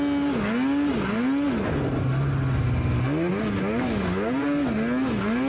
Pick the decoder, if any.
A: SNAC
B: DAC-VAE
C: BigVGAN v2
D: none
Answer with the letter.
D